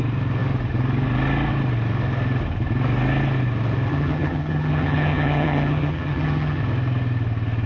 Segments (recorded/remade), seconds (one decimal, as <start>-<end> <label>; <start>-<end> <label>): 0.0-3.9 recorded; 3.9-6.6 remade; 6.6-7.7 recorded